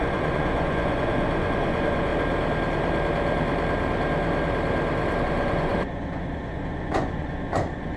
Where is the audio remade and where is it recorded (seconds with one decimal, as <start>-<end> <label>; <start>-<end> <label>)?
0.0-2.1 remade; 2.1-5.2 recorded; 5.2-8.0 remade